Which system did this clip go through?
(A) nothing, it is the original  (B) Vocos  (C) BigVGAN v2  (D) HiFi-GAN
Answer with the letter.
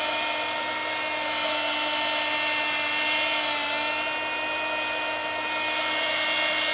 A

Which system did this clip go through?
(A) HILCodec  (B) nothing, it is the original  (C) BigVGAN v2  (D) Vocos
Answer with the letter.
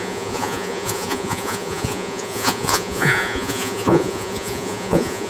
D